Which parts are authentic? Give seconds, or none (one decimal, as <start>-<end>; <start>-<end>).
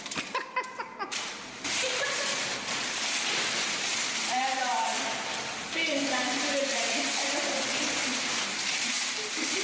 8.9-9.6